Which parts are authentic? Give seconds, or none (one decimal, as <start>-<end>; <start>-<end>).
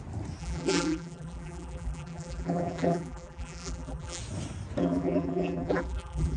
0.0-0.4; 4.2-4.8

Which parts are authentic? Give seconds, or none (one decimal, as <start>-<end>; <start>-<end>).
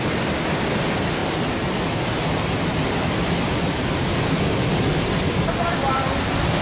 0.0-6.6